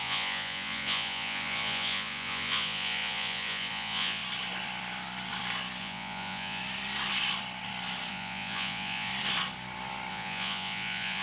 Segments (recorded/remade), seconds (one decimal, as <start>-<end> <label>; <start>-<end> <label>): 0.0-4.2 remade; 4.2-5.8 recorded; 5.8-6.6 remade; 6.6-8.1 recorded; 8.1-9.1 remade; 9.1-10.1 recorded; 10.1-11.2 remade